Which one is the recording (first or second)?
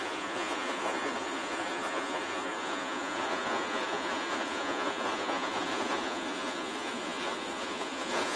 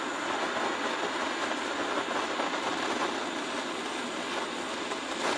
second